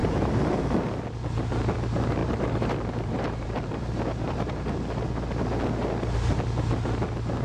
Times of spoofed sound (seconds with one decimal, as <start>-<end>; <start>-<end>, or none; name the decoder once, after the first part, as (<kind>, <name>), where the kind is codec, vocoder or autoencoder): 0.0-0.6 (vocoder, BigVGAN v2); 2.2-4.7